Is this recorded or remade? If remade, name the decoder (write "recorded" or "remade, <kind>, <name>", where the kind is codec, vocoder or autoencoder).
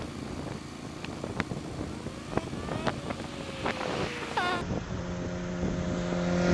recorded